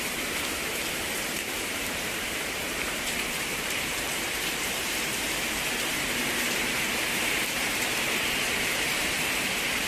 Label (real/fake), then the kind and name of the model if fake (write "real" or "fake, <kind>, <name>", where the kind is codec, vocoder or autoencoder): fake, vocoder, BigVGAN v2